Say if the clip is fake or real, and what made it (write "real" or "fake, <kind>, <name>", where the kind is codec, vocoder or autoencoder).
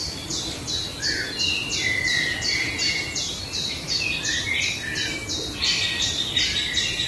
real